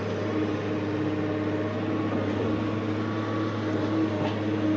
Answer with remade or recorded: recorded